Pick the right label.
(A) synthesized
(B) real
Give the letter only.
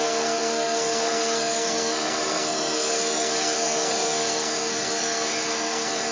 A